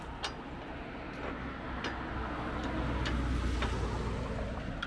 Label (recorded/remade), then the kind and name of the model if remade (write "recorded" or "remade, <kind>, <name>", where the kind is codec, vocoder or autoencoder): recorded